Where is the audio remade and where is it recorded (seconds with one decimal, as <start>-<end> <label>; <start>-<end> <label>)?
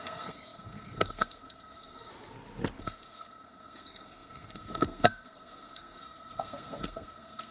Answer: 0.0-2.1 remade; 2.1-2.8 recorded; 2.8-7.5 remade